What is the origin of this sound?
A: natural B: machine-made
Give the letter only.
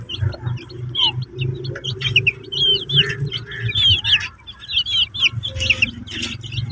A